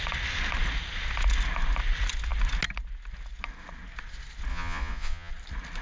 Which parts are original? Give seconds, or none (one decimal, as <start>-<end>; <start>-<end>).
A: 0.0-4.5; 5.3-5.8